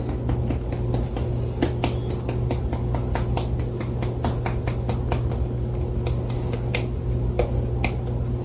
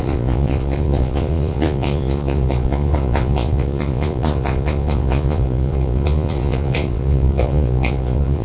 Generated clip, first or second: second